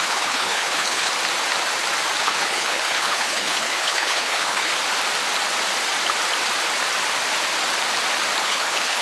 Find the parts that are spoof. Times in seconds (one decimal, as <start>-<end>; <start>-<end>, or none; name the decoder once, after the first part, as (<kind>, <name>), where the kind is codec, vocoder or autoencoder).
0.0-1.1 (codec, HILCodec); 2.2-4.7; 8.4-9.0